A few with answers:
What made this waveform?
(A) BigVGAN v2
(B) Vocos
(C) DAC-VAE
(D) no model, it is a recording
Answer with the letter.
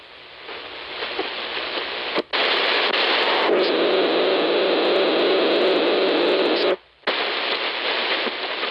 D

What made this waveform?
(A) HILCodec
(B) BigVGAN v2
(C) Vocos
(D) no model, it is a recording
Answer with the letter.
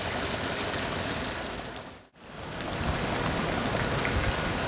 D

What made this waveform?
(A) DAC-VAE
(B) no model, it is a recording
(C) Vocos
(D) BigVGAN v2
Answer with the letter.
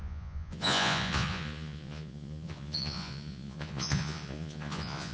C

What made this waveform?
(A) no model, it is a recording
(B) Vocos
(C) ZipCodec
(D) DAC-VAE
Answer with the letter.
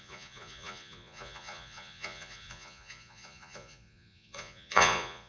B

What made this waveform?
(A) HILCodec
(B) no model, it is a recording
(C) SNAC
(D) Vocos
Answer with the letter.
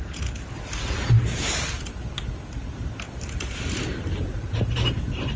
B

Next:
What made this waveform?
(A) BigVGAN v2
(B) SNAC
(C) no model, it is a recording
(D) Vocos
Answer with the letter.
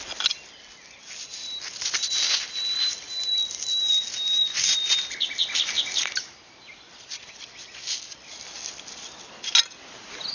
C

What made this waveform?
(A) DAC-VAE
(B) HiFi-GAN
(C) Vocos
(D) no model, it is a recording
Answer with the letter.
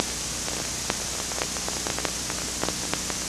D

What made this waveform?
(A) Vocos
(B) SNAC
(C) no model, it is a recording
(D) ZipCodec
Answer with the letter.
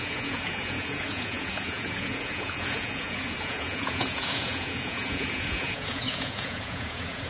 A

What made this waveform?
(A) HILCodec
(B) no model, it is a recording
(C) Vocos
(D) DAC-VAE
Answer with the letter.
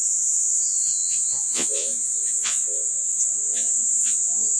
C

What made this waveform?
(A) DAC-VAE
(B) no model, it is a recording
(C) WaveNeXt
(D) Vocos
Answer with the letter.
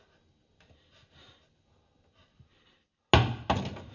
B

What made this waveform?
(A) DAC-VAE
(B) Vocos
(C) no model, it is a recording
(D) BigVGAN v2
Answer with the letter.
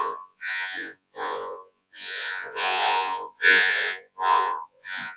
B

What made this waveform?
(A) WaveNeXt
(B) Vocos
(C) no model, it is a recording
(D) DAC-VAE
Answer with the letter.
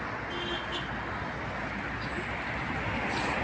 C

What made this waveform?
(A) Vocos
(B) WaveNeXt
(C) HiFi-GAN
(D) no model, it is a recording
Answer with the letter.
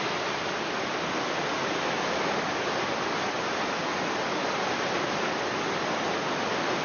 D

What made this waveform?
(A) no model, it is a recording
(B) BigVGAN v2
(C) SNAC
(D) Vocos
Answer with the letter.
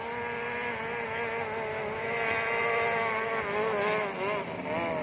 A